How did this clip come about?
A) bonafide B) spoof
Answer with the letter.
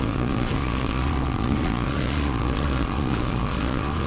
B